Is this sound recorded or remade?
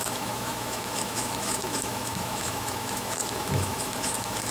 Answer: remade